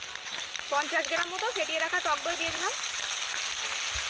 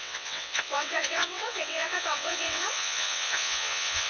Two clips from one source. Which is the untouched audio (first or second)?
first